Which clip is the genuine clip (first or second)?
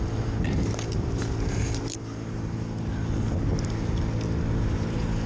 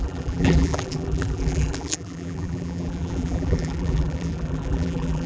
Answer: first